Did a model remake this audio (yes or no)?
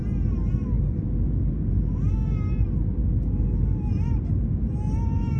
no